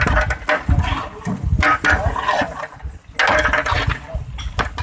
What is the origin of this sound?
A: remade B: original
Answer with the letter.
B